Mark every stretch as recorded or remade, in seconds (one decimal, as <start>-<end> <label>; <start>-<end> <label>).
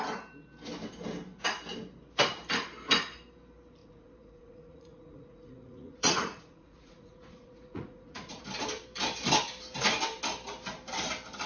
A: 0.0-3.8 recorded; 3.8-8.4 remade; 8.4-11.5 recorded